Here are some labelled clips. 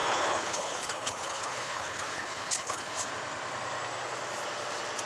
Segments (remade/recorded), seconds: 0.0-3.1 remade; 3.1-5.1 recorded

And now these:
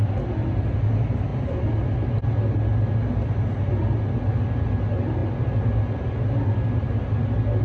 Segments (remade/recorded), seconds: 0.0-7.6 recorded